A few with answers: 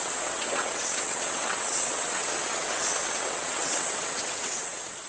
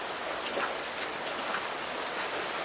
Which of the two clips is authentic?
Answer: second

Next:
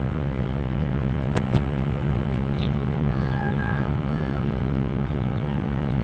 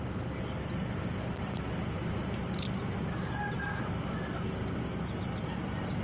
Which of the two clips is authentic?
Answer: second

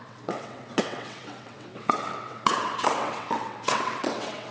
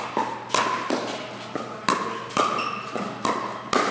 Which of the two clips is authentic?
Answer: second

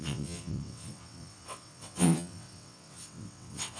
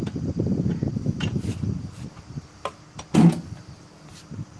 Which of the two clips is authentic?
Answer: second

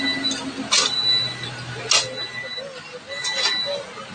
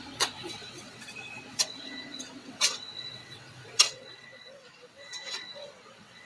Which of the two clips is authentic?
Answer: first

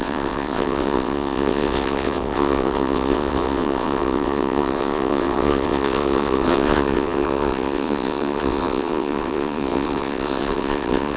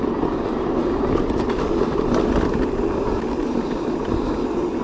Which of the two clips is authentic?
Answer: second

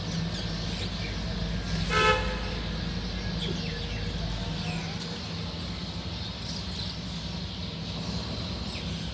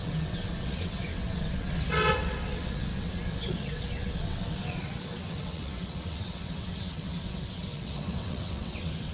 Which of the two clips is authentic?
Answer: first